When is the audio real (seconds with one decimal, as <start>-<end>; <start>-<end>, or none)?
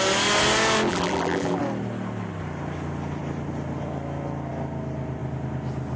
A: 0.0-0.9; 1.6-6.0